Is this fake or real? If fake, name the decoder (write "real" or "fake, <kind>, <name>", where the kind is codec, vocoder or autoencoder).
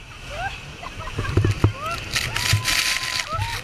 real